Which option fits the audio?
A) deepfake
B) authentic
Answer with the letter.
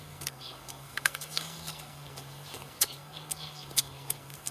A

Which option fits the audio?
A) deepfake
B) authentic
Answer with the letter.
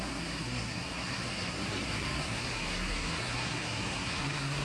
A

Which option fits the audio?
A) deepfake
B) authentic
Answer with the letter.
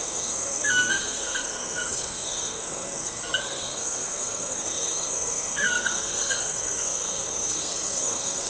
A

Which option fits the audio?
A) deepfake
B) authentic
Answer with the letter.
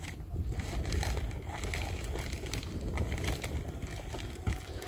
B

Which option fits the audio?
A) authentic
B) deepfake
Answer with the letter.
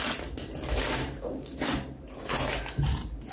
A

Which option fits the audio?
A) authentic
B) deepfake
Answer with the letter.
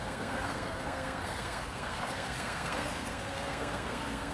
B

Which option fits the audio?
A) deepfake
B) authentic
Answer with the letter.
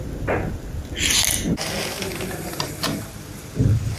B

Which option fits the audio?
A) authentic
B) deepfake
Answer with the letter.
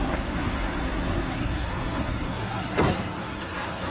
B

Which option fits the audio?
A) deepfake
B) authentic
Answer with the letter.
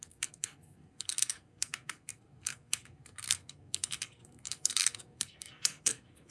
A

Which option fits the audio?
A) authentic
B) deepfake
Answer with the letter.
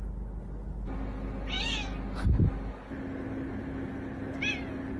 A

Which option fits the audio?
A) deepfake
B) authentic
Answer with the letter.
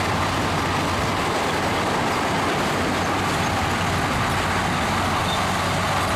B